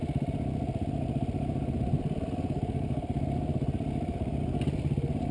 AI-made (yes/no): no